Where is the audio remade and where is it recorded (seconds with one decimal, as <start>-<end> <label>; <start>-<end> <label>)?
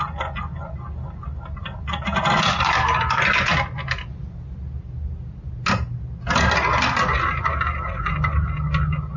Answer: 0.0-9.2 recorded